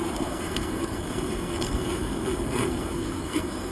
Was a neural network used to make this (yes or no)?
yes